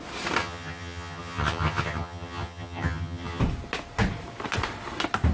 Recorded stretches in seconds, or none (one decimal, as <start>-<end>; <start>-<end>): 0.0-0.4; 3.4-5.3